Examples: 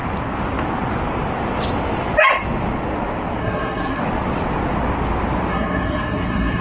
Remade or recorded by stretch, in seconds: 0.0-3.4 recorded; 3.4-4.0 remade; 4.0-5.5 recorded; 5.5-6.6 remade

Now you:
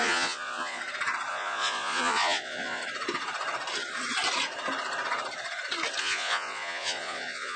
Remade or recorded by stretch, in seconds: 0.0-0.8 remade; 0.8-1.3 recorded; 1.3-2.8 remade; 2.8-6.0 recorded; 6.0-7.6 remade

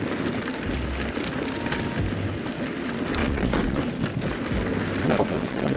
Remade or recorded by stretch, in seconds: 0.0-3.2 recorded; 3.2-3.8 remade; 3.8-5.0 recorded; 5.0-5.8 remade

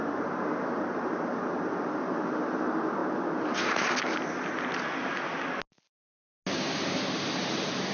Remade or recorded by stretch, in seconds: 0.0-7.9 recorded

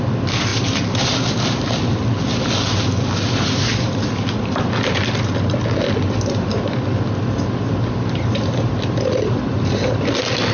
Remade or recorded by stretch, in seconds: 0.0-10.5 recorded

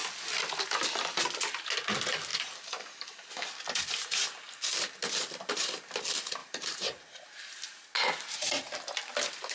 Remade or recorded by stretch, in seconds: 0.0-2.3 recorded; 2.3-3.3 remade; 3.3-6.4 recorded; 6.4-7.5 remade; 7.5-9.5 recorded

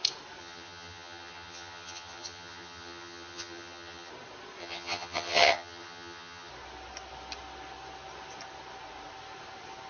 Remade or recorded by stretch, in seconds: 0.0-0.4 recorded; 0.4-4.1 remade; 4.1-4.6 recorded; 4.6-6.5 remade; 6.5-9.9 recorded

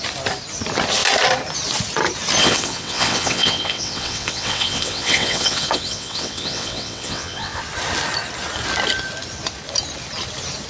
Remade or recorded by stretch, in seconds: 0.0-2.4 recorded; 2.4-7.6 remade; 7.6-10.7 recorded